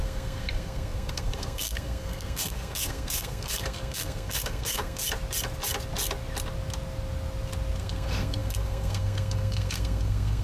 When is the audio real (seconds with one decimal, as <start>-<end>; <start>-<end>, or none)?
5.0-7.8